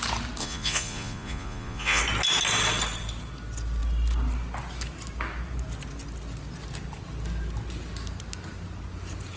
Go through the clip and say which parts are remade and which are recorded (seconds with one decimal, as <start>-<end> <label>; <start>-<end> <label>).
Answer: 0.0-0.4 recorded; 0.4-2.0 remade; 2.0-9.4 recorded